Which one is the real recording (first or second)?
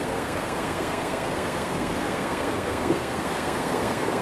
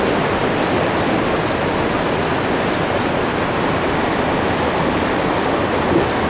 second